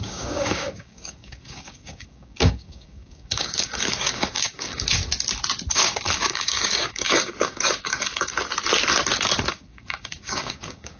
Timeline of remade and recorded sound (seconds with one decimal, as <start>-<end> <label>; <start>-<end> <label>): 0.0-5.0 remade; 5.0-5.7 recorded; 5.7-8.3 remade; 8.3-9.5 recorded; 9.5-11.0 remade